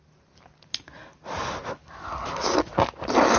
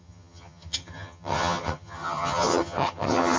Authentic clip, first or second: first